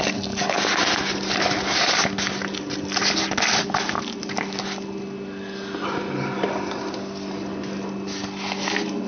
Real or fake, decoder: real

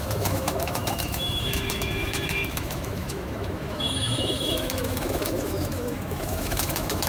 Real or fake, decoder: fake, autoencoder, DAC-VAE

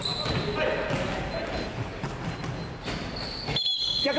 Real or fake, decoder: real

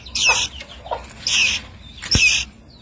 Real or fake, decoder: real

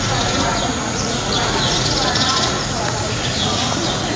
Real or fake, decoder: fake, vocoder, Vocos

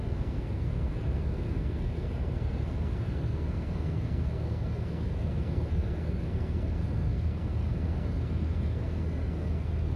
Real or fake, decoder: fake, codec, SNAC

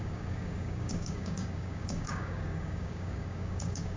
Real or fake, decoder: fake, codec, DAC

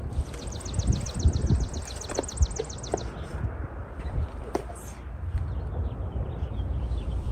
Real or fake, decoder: real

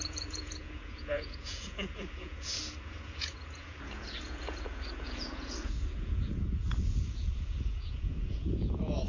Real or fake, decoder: fake, vocoder, Vocos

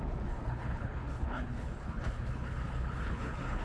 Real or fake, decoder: fake, codec, HILCodec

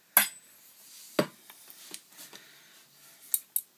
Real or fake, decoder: real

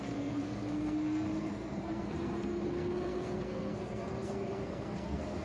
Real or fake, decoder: fake, codec, SNAC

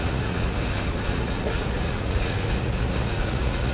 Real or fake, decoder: fake, vocoder, Vocos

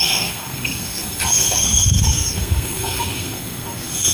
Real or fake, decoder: fake, codec, SNAC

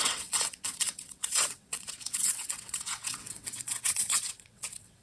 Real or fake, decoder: fake, vocoder, WaveNeXt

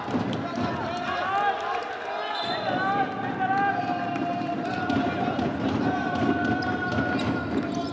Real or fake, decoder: real